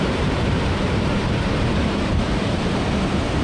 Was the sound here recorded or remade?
remade